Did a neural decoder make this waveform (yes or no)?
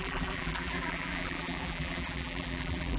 yes